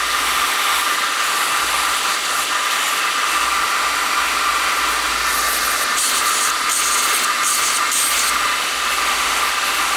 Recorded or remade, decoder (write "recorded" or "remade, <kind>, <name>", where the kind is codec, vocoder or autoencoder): recorded